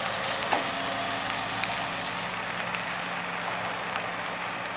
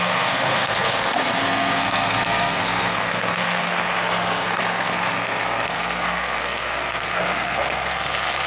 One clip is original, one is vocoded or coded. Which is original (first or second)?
first